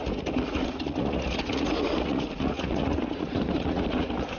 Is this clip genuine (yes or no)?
no